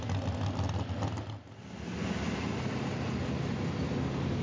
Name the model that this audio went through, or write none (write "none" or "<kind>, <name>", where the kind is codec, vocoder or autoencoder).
none